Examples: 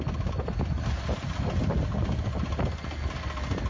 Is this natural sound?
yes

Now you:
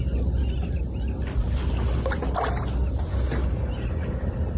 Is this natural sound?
yes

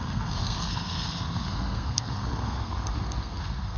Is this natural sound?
no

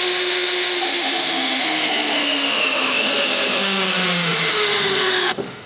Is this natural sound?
no